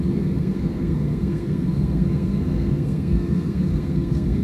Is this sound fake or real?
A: fake